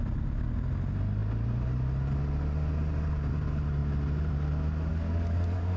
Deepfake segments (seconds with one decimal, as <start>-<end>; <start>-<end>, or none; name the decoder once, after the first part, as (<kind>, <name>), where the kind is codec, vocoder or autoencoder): 4.9-5.8 (codec, DAC)